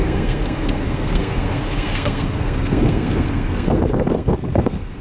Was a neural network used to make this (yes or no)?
yes